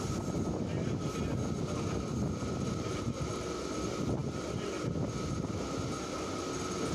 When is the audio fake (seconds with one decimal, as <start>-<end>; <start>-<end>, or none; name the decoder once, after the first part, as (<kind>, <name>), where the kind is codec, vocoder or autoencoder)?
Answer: none